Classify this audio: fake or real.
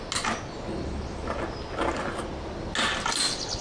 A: real